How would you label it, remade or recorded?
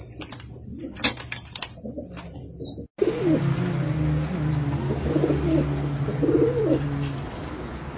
recorded